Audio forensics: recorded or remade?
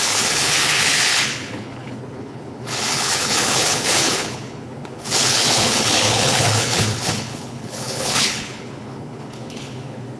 remade